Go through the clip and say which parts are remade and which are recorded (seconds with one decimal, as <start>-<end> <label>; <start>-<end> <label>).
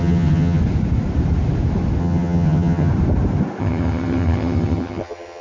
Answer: 0.0-0.6 remade; 0.6-2.0 recorded; 2.0-2.9 remade; 2.9-3.6 recorded; 3.6-5.4 remade